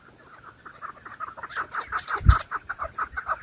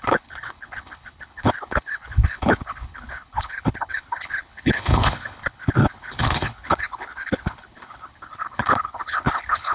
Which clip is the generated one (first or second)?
second